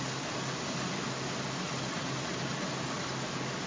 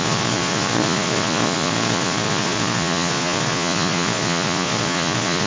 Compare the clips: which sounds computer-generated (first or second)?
second